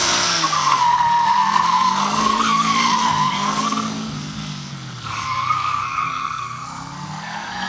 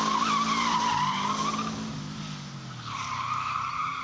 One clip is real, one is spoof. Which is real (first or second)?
second